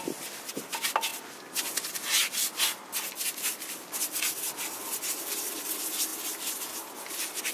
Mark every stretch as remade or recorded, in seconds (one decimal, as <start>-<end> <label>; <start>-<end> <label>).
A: 0.0-7.5 recorded